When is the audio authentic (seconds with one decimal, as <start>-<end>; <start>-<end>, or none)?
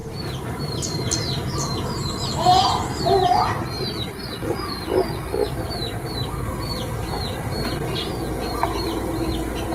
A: 0.0-9.7